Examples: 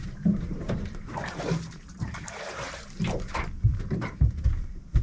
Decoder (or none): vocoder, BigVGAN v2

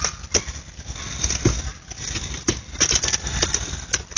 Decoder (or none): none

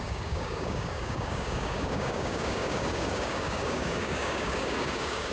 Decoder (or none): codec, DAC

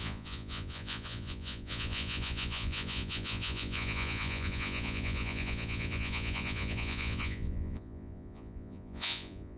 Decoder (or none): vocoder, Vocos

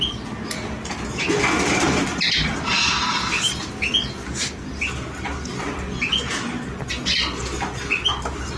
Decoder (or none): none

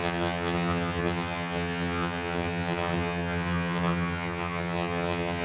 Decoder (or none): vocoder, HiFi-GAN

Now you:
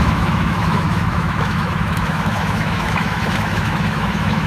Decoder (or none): autoencoder, DAC-VAE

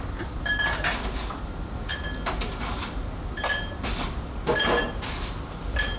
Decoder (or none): none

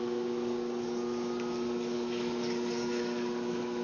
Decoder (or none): codec, DAC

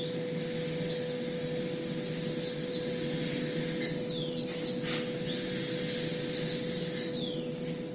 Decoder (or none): none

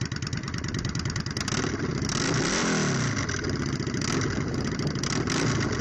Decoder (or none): none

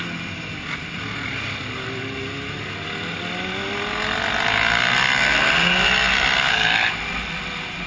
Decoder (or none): none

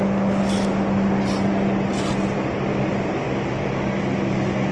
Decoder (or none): none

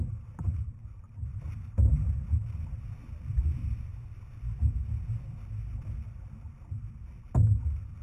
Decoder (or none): none